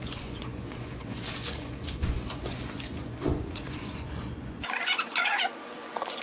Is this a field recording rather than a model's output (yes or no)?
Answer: no